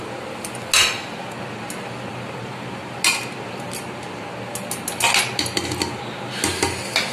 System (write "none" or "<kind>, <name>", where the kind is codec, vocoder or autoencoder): none